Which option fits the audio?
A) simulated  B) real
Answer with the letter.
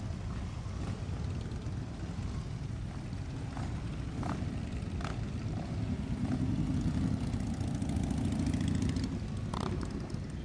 B